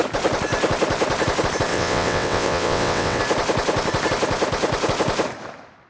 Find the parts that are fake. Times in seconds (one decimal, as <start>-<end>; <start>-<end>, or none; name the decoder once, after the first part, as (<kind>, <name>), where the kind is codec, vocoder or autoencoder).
1.7-3.2 (vocoder, WaveNeXt)